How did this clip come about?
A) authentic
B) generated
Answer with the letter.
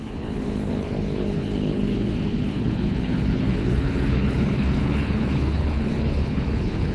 B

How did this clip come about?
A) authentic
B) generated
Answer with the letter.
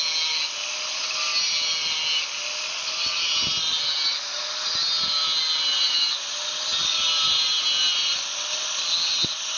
A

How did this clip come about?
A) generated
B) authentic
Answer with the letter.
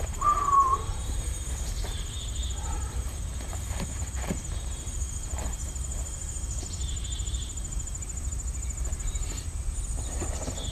A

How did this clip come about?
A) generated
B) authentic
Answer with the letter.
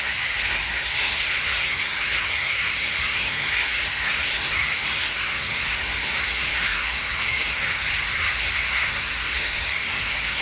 A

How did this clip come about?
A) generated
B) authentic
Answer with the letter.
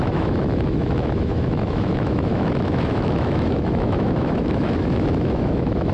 A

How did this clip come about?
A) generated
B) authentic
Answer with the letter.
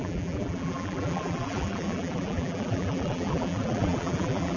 A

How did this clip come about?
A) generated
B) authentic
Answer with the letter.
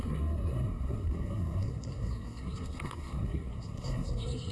A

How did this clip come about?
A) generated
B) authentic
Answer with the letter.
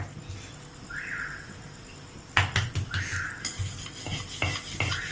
B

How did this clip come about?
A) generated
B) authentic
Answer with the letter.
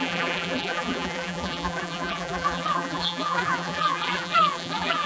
A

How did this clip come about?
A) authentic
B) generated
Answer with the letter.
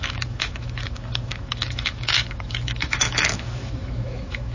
B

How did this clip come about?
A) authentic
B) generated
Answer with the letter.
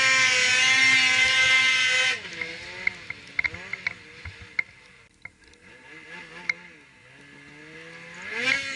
A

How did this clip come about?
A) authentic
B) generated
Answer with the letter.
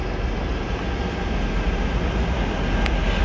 A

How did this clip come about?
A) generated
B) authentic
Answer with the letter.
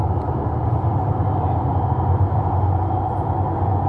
B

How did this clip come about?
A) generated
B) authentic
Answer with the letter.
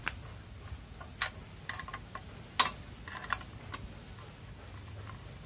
B